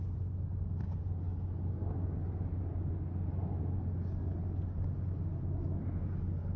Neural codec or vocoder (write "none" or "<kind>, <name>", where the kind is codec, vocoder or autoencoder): none